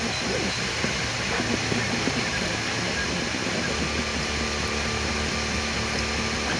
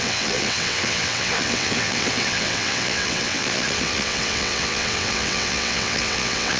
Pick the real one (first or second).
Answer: first